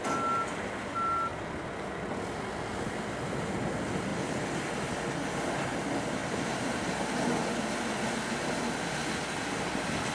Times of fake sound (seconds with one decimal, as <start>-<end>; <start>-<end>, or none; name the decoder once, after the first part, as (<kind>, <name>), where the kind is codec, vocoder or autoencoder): 6.2-6.8 (vocoder, BigVGAN v2)